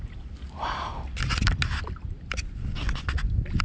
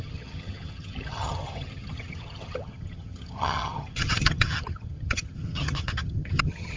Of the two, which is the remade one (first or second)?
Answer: second